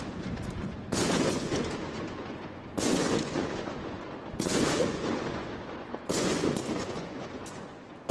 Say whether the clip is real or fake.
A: fake